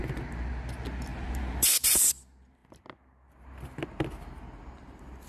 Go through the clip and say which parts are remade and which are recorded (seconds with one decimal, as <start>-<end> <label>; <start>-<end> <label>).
0.0-1.1 recorded; 1.1-2.0 remade; 2.0-5.3 recorded